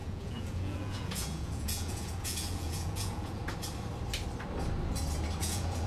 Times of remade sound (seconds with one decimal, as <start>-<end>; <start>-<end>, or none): 0.0-3.5; 5.4-5.9